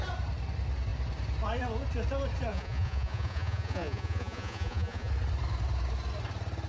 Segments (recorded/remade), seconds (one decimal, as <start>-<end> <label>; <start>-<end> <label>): 0.0-2.5 recorded; 2.5-5.1 remade; 5.1-6.7 recorded

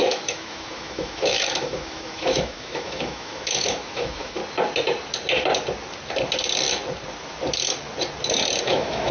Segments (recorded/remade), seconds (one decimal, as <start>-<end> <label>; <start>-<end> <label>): 0.0-4.4 remade; 4.4-8.6 recorded; 8.6-9.1 remade

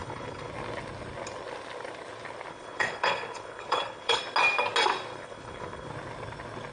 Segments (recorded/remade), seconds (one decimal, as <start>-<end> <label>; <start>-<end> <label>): 0.0-0.5 remade; 0.5-2.5 recorded; 2.5-4.2 remade; 4.2-5.1 recorded; 5.1-5.9 remade; 5.9-6.7 recorded

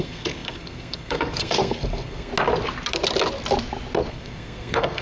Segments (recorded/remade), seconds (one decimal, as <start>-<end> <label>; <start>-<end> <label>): 0.0-2.3 remade; 2.3-4.1 recorded; 4.1-5.0 remade

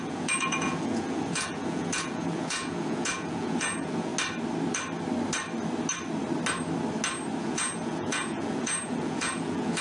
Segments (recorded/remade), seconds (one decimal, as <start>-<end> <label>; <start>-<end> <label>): 0.0-4.1 remade; 4.1-7.4 recorded; 7.4-9.8 remade

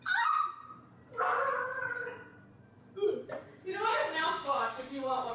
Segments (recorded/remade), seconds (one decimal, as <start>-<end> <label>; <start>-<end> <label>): 0.0-3.9 recorded; 3.9-5.3 remade